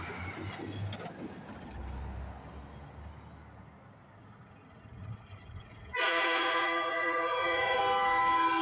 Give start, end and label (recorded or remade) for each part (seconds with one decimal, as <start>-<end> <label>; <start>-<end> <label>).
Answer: 0.0-4.2 recorded; 4.2-7.8 remade; 7.8-8.6 recorded

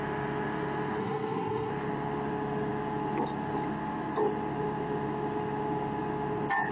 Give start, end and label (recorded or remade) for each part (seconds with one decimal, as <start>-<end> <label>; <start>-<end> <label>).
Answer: 0.0-1.0 recorded; 1.0-1.7 remade; 1.7-6.7 recorded

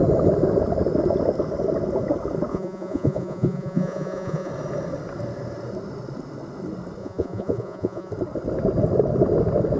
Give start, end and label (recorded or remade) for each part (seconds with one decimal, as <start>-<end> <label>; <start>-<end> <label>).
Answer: 0.0-2.5 recorded; 2.5-4.5 remade; 4.5-7.0 recorded; 7.0-8.1 remade; 8.1-9.8 recorded

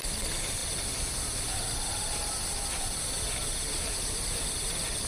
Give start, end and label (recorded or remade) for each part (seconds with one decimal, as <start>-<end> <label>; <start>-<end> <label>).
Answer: 0.0-5.1 recorded

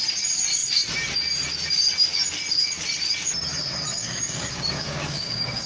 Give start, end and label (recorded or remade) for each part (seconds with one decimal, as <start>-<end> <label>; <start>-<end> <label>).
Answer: 0.0-4.0 recorded; 4.0-5.7 remade

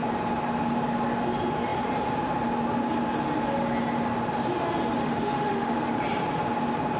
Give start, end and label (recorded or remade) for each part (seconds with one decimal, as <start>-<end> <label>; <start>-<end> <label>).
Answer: 0.0-5.0 recorded; 5.0-5.7 remade; 5.7-7.0 recorded

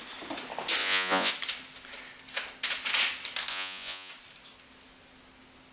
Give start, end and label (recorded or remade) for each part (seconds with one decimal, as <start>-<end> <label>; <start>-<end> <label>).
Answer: 0.0-0.8 recorded; 0.8-1.3 remade; 1.3-3.5 recorded; 3.5-4.1 remade; 4.1-5.7 recorded